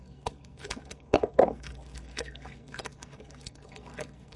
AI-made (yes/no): yes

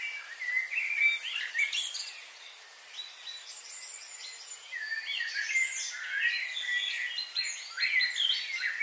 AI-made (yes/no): no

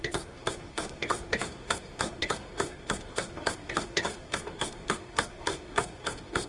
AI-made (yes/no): yes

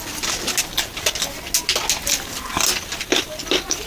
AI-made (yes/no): no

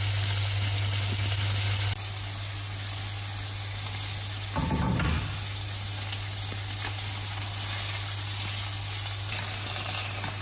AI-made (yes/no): no